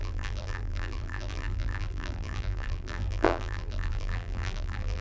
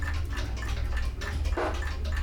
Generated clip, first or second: first